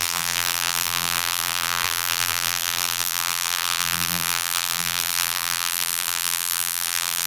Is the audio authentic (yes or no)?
no